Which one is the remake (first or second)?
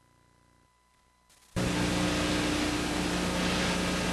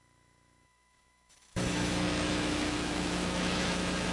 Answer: second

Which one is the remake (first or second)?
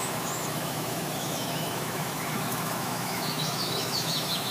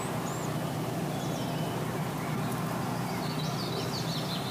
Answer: first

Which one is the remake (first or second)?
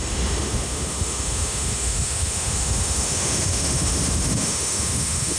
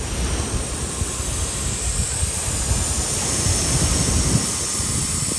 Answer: first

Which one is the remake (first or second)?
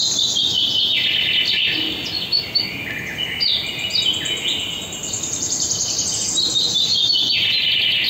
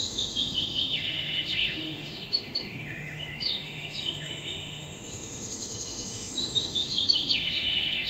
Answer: second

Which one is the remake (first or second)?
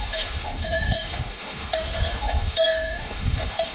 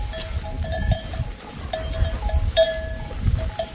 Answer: first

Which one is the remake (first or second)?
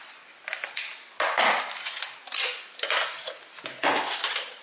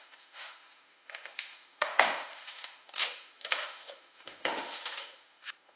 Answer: second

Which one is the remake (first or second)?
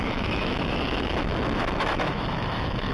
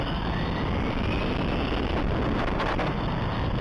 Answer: first